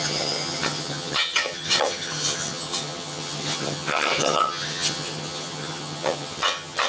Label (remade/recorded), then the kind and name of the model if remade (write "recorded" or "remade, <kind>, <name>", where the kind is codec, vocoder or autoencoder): remade, vocoder, HiFi-GAN